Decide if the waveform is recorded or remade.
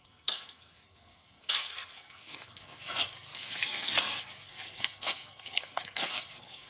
remade